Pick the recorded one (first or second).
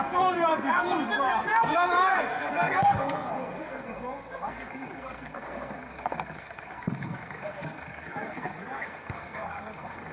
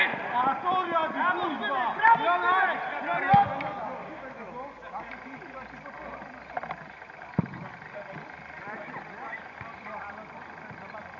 second